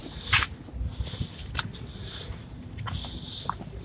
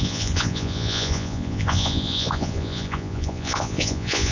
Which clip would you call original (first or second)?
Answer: first